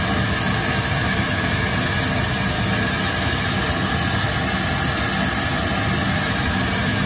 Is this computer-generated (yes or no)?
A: no